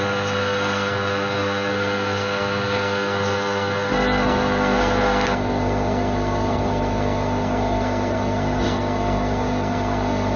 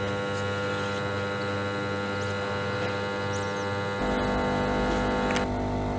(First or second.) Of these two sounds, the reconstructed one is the first